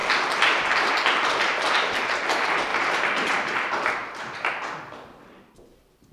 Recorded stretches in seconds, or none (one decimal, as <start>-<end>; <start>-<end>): 0.0-0.9